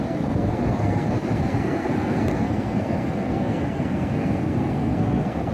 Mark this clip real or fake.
fake